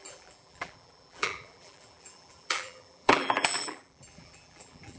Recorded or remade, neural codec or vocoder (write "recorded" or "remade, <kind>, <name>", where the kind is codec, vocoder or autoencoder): remade, vocoder, BigVGAN v2